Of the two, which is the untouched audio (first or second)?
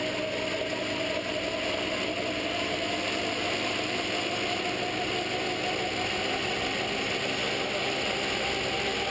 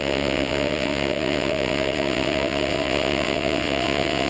first